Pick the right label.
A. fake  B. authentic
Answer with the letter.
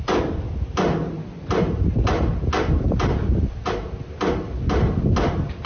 B